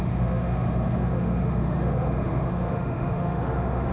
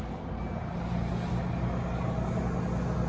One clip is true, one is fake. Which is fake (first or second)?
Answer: first